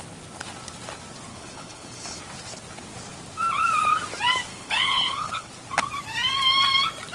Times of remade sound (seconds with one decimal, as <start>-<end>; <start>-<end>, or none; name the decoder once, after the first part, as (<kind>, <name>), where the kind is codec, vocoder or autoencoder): 1.3-2.2 (codec, HILCodec); 4.5-5.5